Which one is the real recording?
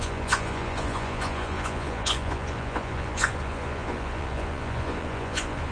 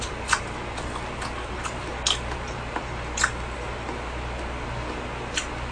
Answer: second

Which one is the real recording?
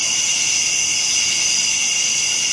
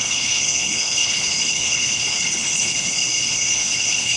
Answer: first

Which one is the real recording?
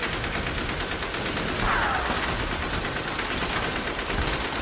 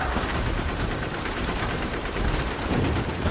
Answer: first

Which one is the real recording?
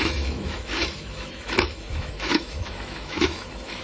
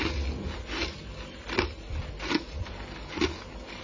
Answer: second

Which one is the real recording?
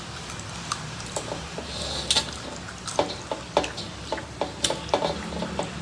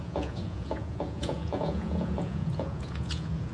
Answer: first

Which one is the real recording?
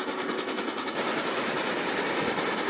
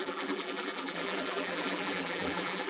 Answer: first